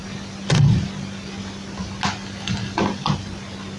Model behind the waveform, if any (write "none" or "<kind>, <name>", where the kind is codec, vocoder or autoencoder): none